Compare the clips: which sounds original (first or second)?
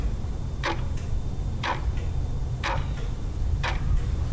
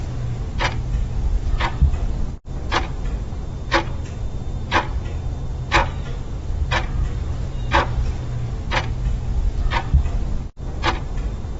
second